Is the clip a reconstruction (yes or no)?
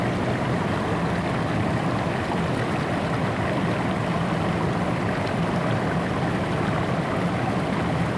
no